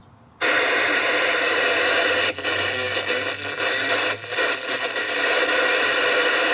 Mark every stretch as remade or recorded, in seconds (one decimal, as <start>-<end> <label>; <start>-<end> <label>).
0.0-6.5 recorded